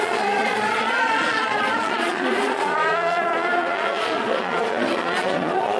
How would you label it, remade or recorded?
remade